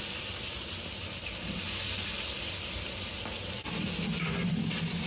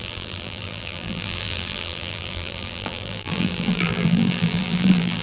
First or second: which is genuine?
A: first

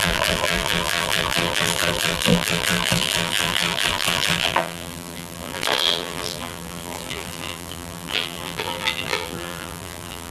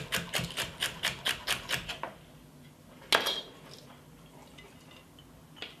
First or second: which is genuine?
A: second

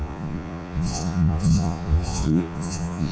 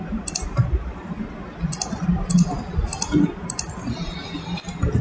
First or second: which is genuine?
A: second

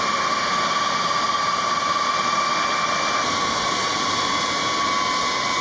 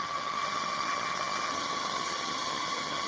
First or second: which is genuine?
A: first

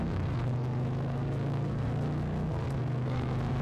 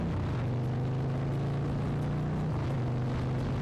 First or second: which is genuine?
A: second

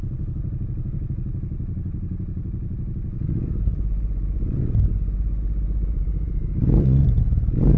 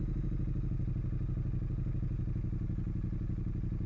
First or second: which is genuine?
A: second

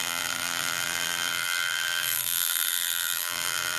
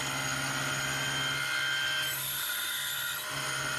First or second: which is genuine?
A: second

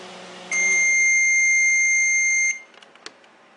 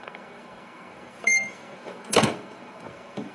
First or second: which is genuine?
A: first